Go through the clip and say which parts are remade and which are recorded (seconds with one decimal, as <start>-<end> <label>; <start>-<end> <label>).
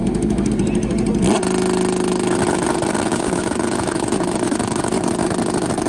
0.0-0.5 remade; 0.5-3.1 recorded; 3.1-5.1 remade; 5.1-5.9 recorded